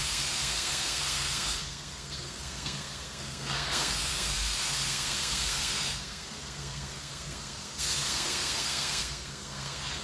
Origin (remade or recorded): remade